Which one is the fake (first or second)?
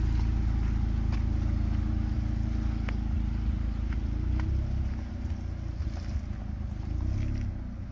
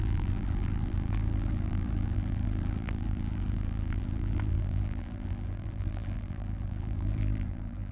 second